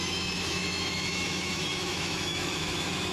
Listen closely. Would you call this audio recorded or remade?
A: remade